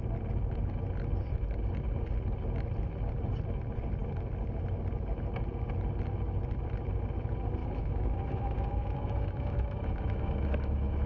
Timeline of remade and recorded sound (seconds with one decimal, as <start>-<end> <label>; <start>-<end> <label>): 0.0-7.6 recorded; 7.6-11.1 remade